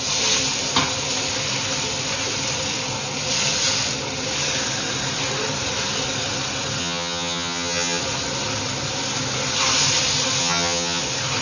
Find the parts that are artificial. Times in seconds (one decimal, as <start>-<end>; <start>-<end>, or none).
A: 6.8-8.0; 10.4-11.0